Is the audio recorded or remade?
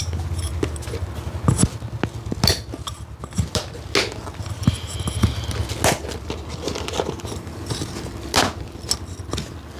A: recorded